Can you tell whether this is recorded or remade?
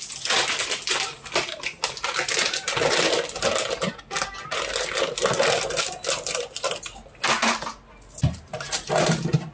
recorded